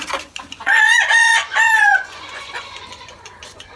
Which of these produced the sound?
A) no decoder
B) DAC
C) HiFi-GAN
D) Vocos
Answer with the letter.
D